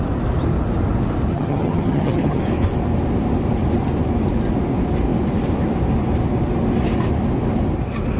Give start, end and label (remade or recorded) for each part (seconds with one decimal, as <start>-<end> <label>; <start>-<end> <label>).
0.0-1.3 recorded; 1.3-2.4 remade; 2.4-8.2 recorded